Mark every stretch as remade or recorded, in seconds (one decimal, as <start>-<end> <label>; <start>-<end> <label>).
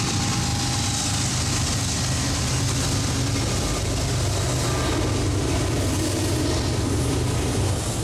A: 0.0-8.0 recorded